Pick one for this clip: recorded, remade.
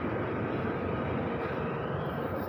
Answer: recorded